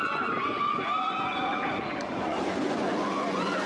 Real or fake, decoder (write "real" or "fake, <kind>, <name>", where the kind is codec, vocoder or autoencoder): fake, vocoder, Vocos